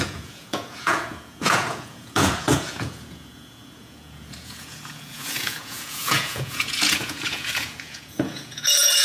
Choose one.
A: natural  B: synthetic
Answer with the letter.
B